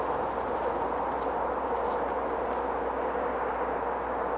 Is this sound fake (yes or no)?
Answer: no